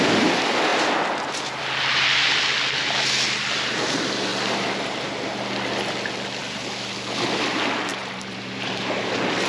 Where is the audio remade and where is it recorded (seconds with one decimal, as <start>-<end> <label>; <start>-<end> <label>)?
0.0-7.9 recorded; 7.9-9.0 remade; 9.0-9.5 recorded